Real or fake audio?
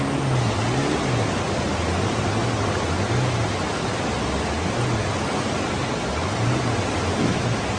real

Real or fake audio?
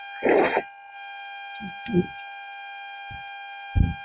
real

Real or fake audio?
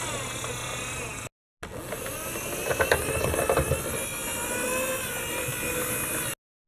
real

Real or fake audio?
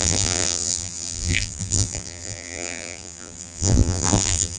fake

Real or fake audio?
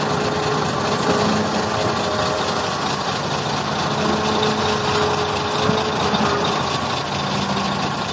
real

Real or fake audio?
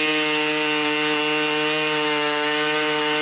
real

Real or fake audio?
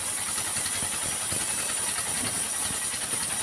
real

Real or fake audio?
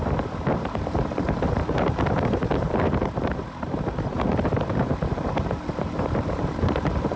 fake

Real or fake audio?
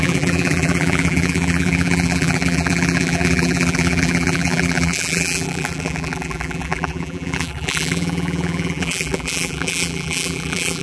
fake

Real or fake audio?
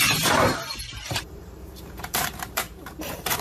fake